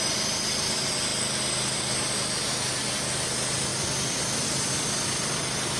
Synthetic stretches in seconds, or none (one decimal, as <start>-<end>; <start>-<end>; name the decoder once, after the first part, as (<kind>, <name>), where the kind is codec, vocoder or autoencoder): none